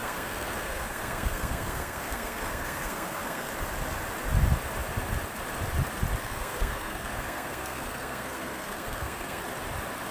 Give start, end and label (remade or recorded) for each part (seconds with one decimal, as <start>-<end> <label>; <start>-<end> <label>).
0.0-3.5 remade; 3.5-6.2 recorded; 6.2-9.4 remade; 9.4-10.1 recorded